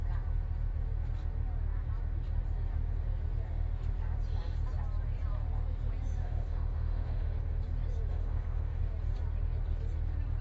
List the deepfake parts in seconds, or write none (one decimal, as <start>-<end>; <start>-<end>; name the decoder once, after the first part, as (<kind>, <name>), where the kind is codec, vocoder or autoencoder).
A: 6.2-7.6 (autoencoder, DAC-VAE); 8.1-8.8